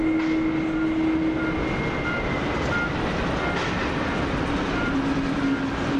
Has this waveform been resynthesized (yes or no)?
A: no